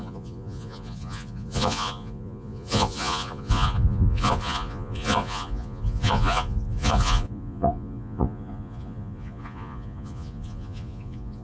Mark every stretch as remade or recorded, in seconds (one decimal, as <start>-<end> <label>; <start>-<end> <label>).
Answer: 0.0-11.4 remade